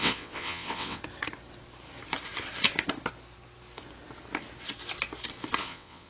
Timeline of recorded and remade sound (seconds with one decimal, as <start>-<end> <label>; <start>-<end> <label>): 0.0-1.0 remade; 1.0-5.6 recorded; 5.6-6.1 remade